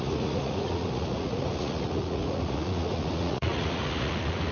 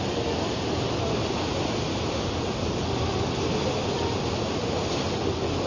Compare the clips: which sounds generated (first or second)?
first